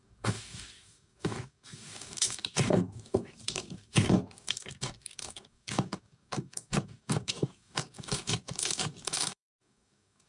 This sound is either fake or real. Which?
fake